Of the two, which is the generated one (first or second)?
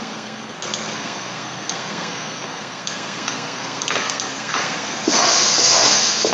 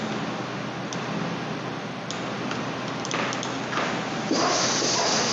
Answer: first